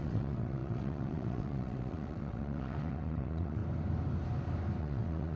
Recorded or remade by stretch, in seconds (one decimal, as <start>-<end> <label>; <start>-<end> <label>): 0.0-3.6 remade; 3.6-4.8 recorded; 4.8-5.4 remade